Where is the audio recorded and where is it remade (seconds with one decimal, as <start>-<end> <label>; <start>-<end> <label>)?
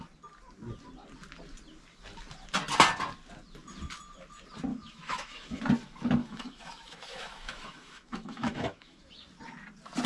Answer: 0.0-4.7 recorded; 4.7-5.6 remade; 5.6-6.2 recorded; 6.2-9.1 remade; 9.1-10.1 recorded